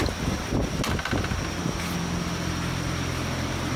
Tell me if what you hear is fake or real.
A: real